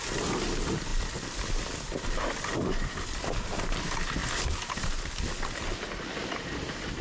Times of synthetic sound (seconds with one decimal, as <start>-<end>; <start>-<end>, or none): none